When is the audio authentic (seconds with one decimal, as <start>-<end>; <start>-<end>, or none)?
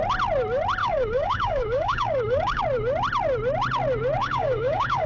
0.0-0.8; 2.6-4.2